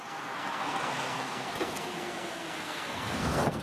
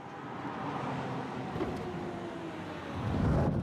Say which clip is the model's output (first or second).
first